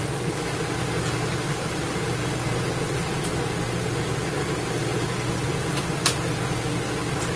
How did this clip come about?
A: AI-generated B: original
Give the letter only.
B